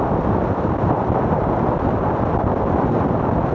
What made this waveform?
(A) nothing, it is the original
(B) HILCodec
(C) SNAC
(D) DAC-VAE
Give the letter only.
A